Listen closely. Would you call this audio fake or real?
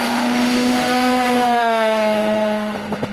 fake